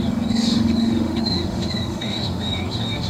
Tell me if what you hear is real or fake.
fake